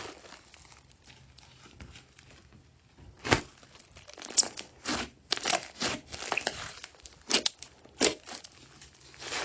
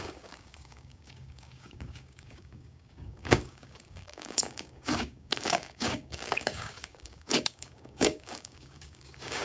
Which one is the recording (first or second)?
first